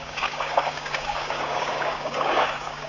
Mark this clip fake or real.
fake